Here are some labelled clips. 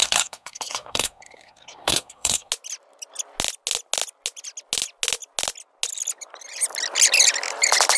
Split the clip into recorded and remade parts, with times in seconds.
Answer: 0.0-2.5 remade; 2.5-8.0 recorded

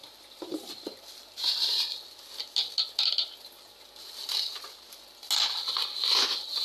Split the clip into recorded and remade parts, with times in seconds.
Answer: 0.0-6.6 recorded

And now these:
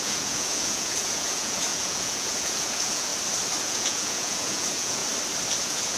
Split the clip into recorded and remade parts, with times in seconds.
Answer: 0.0-3.1 remade; 3.1-3.6 recorded; 3.6-5.0 remade; 5.0-5.6 recorded; 5.6-6.0 remade

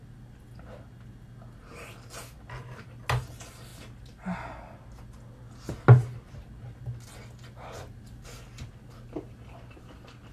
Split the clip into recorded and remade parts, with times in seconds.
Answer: 0.0-10.3 recorded